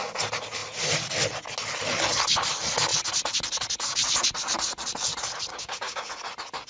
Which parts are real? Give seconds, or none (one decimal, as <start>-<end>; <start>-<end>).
0.0-5.5; 6.1-6.7